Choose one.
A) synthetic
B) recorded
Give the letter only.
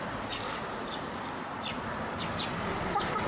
B